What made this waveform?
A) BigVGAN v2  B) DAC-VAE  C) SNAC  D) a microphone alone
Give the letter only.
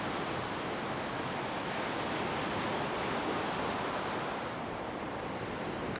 D